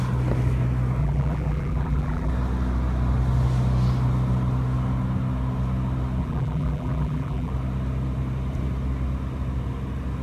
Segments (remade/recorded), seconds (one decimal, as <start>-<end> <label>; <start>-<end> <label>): 0.0-1.0 recorded; 1.0-2.3 remade; 2.3-6.2 recorded; 6.2-7.5 remade; 7.5-10.2 recorded

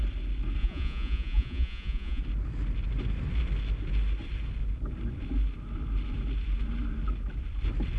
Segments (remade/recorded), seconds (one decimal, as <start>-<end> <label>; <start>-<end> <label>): 0.0-0.6 recorded; 0.6-2.2 remade; 2.2-8.0 recorded

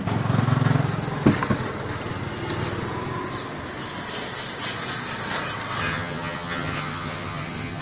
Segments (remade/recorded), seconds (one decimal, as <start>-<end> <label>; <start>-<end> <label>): 0.0-5.8 recorded; 5.8-7.8 remade

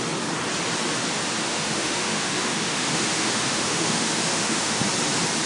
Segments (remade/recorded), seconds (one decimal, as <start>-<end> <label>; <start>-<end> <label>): 0.0-1.5 recorded; 1.5-4.8 remade; 4.8-5.5 recorded

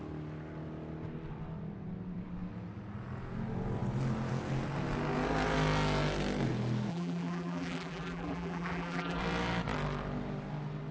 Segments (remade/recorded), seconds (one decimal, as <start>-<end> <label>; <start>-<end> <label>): 0.0-6.9 recorded; 6.9-9.2 remade; 9.2-10.9 recorded

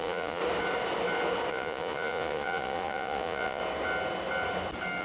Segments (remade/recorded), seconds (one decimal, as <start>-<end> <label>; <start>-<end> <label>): 0.0-0.4 remade; 0.4-1.5 recorded; 1.5-3.6 remade; 3.6-5.0 recorded